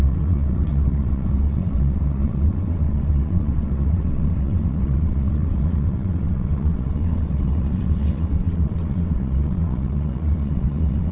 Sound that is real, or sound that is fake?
fake